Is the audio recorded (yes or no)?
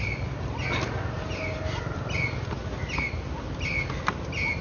yes